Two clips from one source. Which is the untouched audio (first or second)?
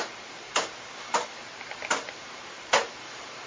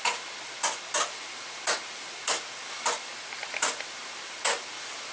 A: second